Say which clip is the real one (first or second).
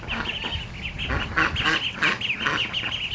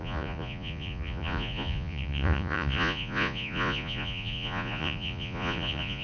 first